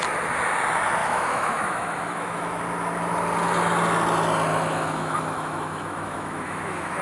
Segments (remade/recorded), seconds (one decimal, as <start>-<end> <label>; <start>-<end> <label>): 0.0-1.0 recorded; 1.0-2.6 remade; 2.6-4.5 recorded; 4.5-7.0 remade